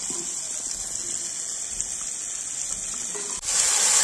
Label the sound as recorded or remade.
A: recorded